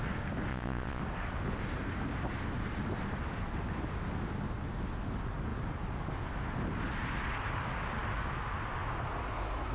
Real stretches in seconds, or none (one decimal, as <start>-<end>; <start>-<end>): 0.0-0.5; 1.0-9.7